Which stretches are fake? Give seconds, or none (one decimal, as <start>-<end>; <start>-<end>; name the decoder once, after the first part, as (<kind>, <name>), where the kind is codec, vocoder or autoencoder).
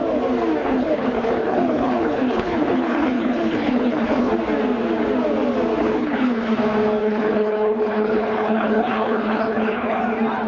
0.6-4.3 (codec, HILCodec); 5.8-6.6; 7.0-10.0